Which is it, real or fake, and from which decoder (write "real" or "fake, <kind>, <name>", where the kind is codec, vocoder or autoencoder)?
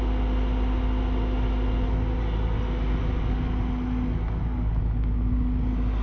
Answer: real